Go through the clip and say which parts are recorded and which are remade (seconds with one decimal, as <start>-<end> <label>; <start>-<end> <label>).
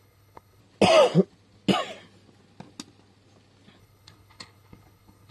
0.0-0.6 remade; 0.6-3.8 recorded; 3.8-5.3 remade